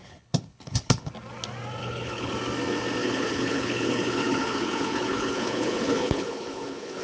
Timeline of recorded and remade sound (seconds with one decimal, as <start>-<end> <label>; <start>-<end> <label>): 0.0-1.1 remade; 1.1-1.8 recorded; 1.8-2.3 remade; 2.3-3.0 recorded; 3.0-7.0 remade